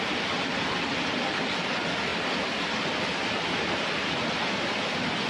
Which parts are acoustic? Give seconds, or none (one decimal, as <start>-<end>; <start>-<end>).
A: 0.0-5.3